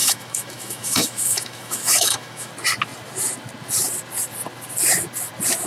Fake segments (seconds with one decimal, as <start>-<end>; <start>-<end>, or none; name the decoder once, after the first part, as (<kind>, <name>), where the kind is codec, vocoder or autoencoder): 0.0-2.5 (autoencoder, DAC-VAE)